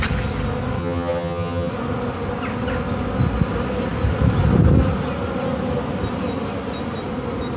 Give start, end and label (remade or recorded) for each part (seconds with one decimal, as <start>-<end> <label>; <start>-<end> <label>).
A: 0.0-0.8 recorded; 0.8-1.7 remade; 1.7-7.6 recorded